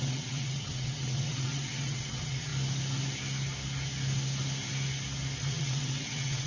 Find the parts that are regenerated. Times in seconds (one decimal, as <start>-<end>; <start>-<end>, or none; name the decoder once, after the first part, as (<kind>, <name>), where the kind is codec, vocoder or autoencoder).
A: 0.0-2.5 (vocoder, WaveNeXt); 5.4-6.5